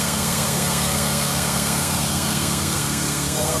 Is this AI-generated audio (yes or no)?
yes